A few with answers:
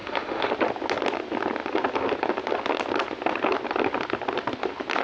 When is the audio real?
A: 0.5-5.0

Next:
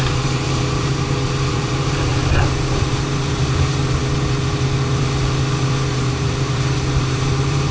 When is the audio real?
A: 4.0-5.9

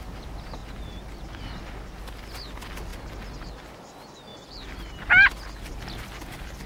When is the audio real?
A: 0.0-4.3; 5.7-6.7